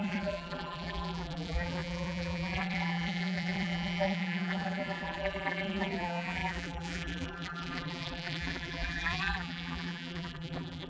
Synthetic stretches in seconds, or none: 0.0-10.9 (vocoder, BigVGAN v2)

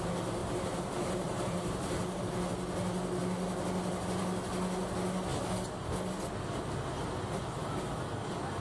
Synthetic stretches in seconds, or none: 0.4-2.2 (vocoder, BigVGAN v2)

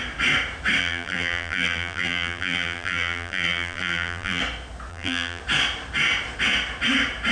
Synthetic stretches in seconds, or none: 0.8-4.4 (vocoder, BigVGAN v2); 4.9-5.4

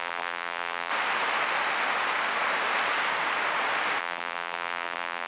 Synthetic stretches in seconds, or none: 0.0-0.9 (vocoder, BigVGAN v2); 4.0-5.3